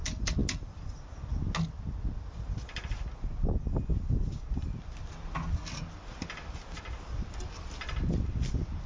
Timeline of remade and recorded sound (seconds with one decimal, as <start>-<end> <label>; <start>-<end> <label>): 0.0-8.9 recorded